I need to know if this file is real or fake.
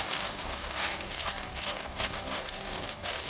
fake